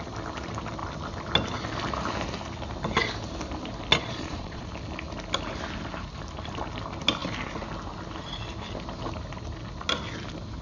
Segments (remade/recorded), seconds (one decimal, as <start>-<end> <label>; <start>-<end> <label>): 0.0-4.0 recorded; 4.0-4.7 remade; 4.7-10.6 recorded